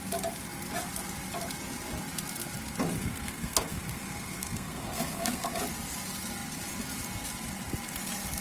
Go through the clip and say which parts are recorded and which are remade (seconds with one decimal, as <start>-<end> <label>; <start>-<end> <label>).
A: 0.0-3.0 recorded; 3.0-5.5 remade; 5.5-8.4 recorded

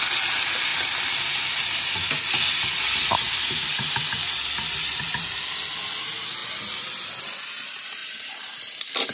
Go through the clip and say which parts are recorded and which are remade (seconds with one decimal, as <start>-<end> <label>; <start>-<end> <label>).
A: 0.0-0.7 recorded; 0.7-1.8 remade; 1.8-8.0 recorded; 8.0-9.1 remade